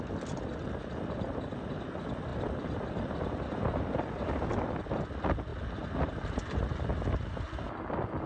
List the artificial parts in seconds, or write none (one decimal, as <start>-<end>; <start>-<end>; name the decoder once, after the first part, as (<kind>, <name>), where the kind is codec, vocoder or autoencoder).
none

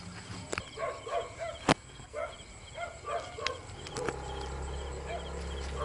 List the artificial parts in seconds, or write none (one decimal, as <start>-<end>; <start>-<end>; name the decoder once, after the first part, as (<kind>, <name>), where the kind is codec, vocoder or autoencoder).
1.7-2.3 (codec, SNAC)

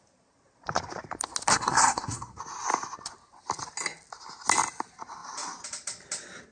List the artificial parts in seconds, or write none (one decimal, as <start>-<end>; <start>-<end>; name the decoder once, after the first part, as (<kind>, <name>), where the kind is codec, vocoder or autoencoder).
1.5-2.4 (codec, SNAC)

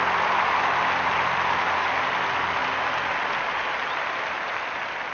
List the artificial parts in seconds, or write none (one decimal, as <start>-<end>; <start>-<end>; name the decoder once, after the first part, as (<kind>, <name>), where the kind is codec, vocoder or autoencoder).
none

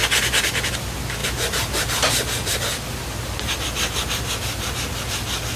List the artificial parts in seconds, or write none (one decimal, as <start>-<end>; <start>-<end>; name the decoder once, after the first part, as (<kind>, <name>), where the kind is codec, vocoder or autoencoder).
none

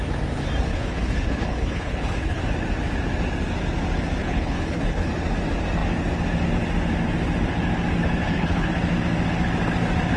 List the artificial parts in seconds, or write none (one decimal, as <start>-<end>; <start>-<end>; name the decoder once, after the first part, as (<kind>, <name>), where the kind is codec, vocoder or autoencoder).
0.7-2.4 (codec, HILCodec); 4.2-5.1; 8.2-8.7

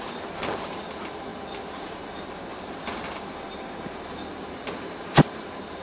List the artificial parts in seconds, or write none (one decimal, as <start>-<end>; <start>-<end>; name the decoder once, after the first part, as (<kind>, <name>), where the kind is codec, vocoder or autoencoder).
none

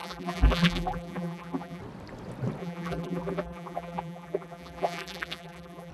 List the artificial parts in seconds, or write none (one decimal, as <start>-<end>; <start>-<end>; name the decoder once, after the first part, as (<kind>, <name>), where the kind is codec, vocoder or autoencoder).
0.0-1.8 (vocoder, BigVGAN v2); 2.6-5.9